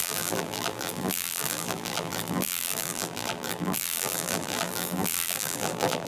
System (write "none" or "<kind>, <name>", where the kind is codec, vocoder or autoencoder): vocoder, BigVGAN v2